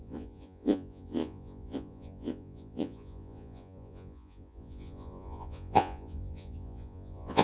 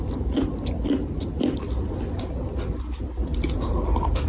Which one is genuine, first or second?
second